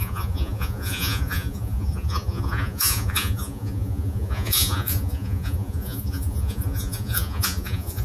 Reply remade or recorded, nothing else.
remade